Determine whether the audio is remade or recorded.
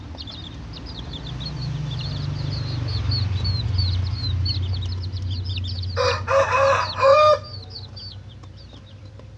recorded